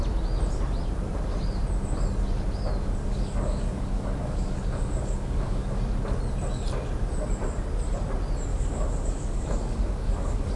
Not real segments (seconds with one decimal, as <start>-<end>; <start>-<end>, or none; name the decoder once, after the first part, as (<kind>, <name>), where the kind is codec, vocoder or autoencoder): 3.0-5.8 (codec, DAC); 8.5-10.6

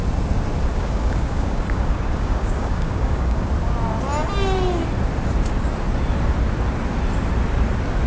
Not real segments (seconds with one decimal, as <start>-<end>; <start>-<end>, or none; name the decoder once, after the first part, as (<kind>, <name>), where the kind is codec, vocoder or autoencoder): 0.7-3.5 (codec, DAC)

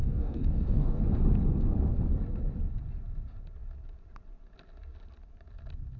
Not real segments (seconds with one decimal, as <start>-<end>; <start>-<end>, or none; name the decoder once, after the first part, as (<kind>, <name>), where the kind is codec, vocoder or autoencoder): 0.0-1.0 (codec, DAC)

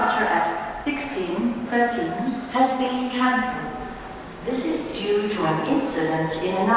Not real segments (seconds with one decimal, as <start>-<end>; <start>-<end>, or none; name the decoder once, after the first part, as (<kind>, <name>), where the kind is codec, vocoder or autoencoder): 1.1-4.5 (codec, DAC)

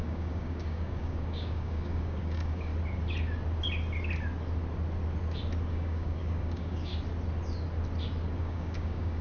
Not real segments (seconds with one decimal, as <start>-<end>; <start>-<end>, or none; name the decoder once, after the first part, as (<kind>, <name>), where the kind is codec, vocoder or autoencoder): 0.0-2.7 (codec, DAC); 5.7-6.9; 8.4-9.2

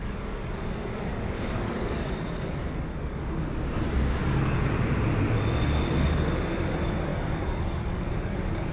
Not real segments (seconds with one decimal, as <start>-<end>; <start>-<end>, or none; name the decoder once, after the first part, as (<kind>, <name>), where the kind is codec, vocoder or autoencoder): 0.0-3.4 (codec, DAC); 4.2-4.7; 7.1-8.7